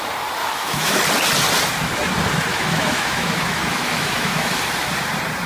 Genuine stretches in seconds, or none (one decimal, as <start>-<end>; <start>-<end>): 0.0-0.4; 1.0-2.5; 4.6-5.5